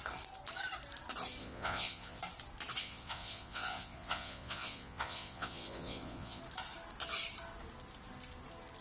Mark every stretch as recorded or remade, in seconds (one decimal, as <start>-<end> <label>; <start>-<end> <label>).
0.0-1.4 recorded; 1.4-2.2 remade; 2.2-2.8 recorded; 2.8-6.4 remade; 6.4-8.8 recorded